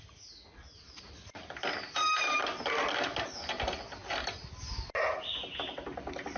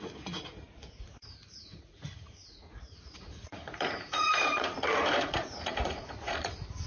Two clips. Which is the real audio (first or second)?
first